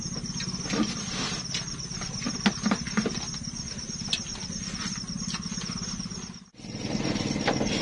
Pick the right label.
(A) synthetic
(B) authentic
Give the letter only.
B